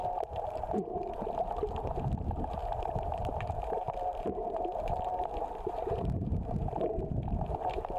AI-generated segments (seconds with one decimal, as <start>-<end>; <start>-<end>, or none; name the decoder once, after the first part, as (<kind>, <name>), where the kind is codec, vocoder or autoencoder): 0.0-8.0 (vocoder, BigVGAN v2)